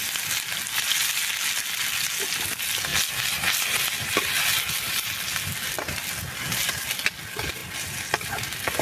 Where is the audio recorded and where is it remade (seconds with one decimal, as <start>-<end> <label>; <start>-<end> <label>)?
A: 0.0-8.8 recorded